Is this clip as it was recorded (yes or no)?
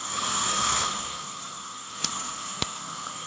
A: no